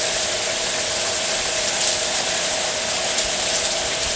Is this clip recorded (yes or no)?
yes